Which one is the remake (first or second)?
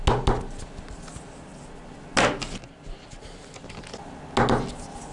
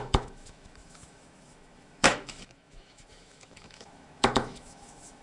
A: second